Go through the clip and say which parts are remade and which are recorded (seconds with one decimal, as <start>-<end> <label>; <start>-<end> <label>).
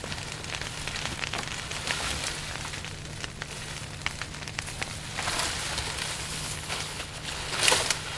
0.0-6.3 recorded; 6.3-7.6 remade; 7.6-8.2 recorded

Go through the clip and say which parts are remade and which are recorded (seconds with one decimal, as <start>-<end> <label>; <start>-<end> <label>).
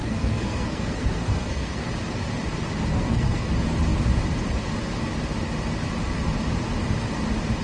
0.0-1.9 remade; 1.9-2.9 recorded; 2.9-3.5 remade; 3.5-7.6 recorded